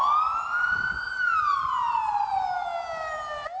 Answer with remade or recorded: recorded